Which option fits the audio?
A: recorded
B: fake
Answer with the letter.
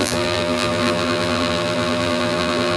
B